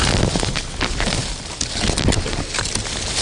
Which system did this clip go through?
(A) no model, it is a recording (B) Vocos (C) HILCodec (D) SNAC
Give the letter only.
A